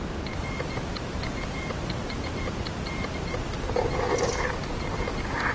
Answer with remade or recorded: recorded